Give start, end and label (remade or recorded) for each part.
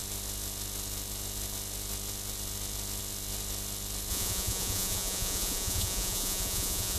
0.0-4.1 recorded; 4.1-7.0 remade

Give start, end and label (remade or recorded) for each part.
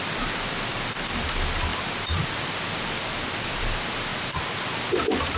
0.0-4.1 remade; 4.1-4.9 recorded; 4.9-5.4 remade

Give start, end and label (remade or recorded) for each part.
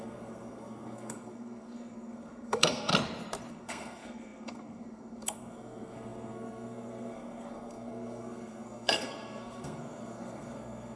0.0-2.9 remade; 2.9-3.5 recorded; 3.5-11.0 remade